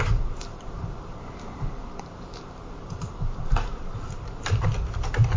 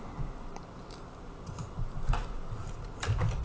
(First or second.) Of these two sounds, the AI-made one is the first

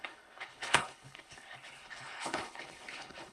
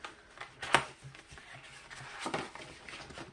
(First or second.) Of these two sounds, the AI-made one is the first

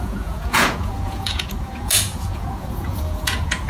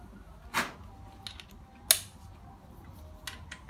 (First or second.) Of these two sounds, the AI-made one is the first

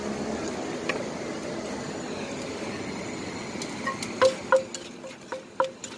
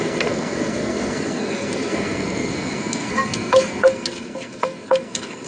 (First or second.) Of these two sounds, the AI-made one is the second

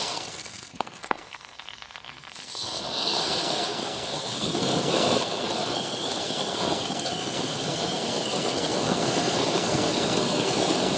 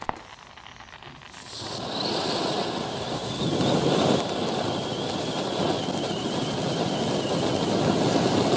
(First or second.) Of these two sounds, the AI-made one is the first